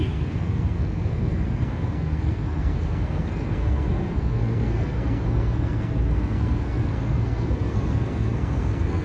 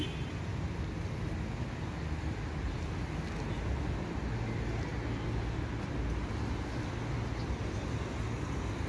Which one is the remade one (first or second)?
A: first